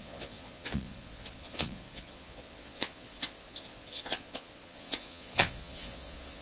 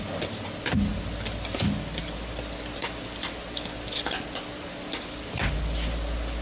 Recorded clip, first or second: second